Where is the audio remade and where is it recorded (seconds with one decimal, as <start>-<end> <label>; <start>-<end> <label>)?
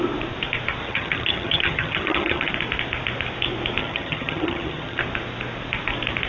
0.0-0.8 recorded; 0.8-2.5 remade; 2.5-3.8 recorded; 3.8-5.0 remade; 5.0-6.3 recorded